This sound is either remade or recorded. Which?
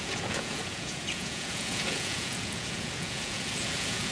remade